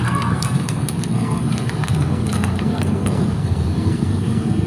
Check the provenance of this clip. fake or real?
fake